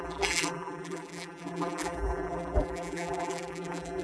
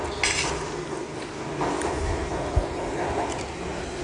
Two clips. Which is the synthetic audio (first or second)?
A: first